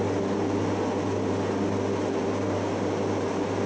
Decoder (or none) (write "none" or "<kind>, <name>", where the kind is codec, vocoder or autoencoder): none